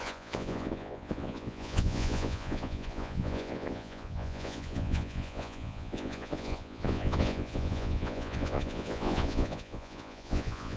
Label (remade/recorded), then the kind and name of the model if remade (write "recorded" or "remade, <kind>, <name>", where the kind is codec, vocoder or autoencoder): remade, vocoder, Vocos